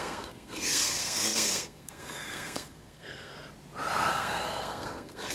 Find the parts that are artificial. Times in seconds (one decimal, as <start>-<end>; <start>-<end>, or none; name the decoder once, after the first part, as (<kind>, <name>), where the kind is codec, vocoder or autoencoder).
0.0-3.3 (codec, SNAC); 4.1-5.3